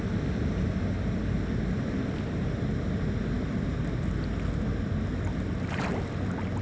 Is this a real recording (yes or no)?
yes